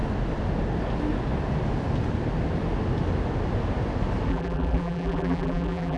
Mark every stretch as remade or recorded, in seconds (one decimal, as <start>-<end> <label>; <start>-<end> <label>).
0.0-4.3 recorded; 4.3-6.0 remade